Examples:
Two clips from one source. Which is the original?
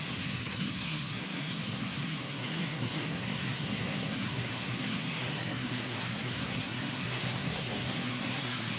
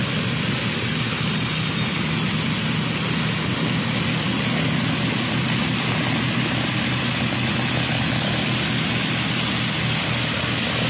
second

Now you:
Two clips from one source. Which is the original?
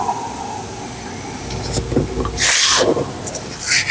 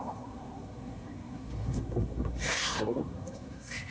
first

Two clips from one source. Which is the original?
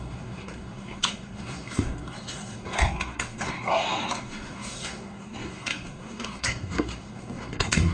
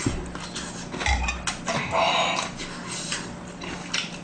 second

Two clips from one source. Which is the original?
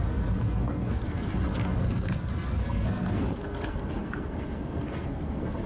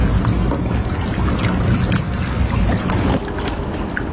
second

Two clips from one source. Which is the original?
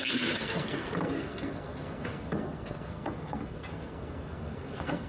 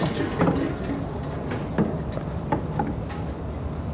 second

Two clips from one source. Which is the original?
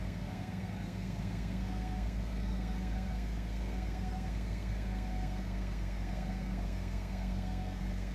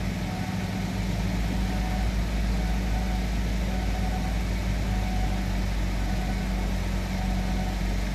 second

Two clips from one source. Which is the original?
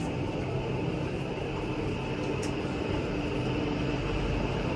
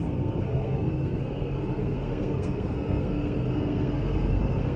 first